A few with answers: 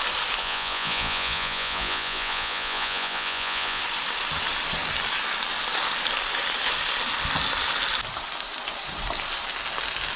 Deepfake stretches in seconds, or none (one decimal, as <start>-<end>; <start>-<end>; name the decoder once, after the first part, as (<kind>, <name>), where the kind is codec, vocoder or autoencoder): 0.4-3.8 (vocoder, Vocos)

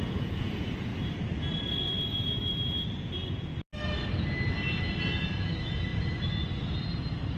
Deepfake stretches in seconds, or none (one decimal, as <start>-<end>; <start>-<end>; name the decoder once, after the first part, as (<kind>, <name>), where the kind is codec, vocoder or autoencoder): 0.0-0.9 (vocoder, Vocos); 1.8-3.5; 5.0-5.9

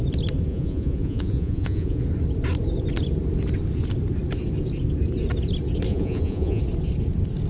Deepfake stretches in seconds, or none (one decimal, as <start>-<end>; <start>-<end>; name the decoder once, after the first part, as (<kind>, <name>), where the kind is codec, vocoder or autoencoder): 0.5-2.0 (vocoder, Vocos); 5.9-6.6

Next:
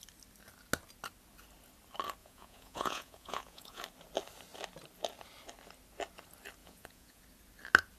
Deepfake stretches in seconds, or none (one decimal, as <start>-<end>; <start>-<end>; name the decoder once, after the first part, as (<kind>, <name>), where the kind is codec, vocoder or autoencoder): 2.2-3.8 (vocoder, Vocos); 6.6-7.2

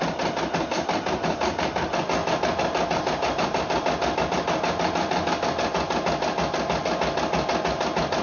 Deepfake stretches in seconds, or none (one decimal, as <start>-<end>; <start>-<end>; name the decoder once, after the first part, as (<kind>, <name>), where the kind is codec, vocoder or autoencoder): none